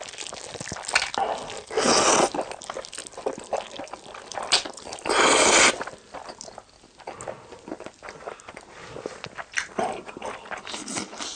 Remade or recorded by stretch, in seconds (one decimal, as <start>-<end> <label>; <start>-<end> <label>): 0.0-11.4 recorded